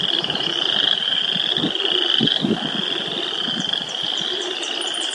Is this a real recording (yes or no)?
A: yes